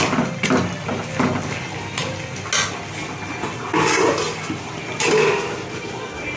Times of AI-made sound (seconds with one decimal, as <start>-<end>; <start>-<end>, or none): none